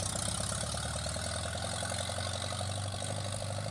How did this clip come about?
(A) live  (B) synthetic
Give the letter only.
A